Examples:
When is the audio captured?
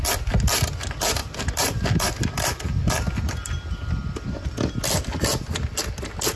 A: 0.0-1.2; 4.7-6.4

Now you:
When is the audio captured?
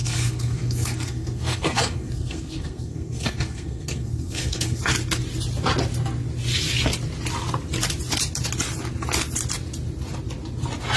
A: 4.8-11.0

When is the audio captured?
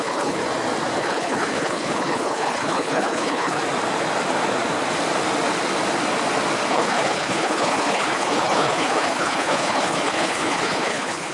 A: 0.4-1.0; 3.6-6.7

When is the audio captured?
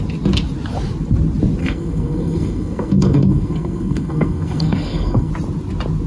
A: 0.0-1.6; 5.3-6.1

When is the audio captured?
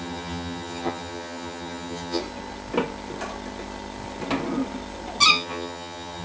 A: 2.2-5.3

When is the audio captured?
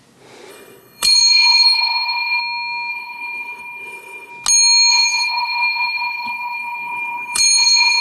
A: 0.0-0.5; 2.4-2.9; 4.3-4.9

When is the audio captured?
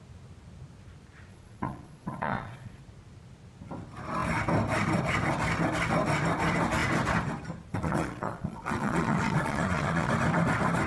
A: 0.0-1.3; 2.8-7.7; 10.1-10.9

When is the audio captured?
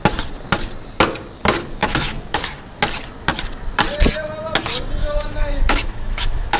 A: 0.0-1.8; 2.4-5.0